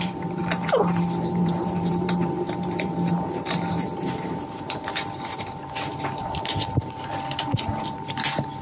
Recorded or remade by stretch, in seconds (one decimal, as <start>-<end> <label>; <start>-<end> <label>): 0.0-8.6 remade